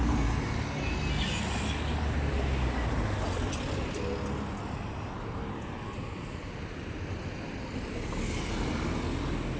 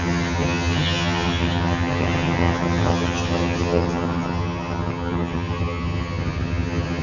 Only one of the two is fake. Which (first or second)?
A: second